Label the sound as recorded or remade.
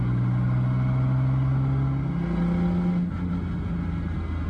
recorded